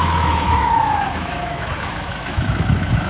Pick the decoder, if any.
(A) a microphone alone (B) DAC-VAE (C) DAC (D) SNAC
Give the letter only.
B